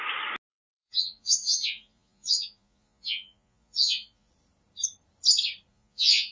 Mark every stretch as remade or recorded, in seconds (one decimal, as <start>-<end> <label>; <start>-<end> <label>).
0.0-0.5 recorded; 0.5-4.3 remade; 4.3-5.7 recorded; 5.7-6.3 remade